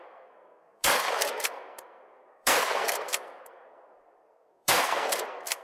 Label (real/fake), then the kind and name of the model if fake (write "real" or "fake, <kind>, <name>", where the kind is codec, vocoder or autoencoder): fake, codec, SNAC